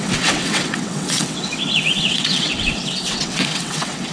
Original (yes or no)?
no